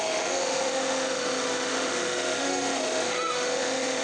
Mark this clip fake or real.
fake